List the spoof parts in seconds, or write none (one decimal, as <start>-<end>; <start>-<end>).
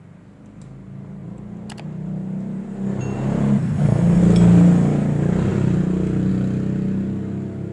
3.6-4.2